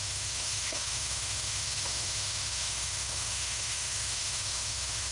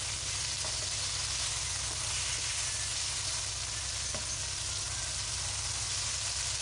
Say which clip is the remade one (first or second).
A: first